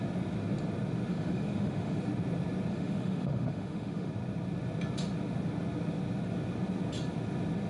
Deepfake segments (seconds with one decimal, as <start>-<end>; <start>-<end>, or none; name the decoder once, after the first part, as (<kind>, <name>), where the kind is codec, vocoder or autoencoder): 1.1-2.0 (autoencoder, DAC-VAE); 2.7-4.1